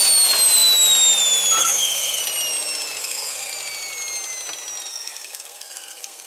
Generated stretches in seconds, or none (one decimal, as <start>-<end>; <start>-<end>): 1.6-2.2; 3.0-3.5; 4.9-6.3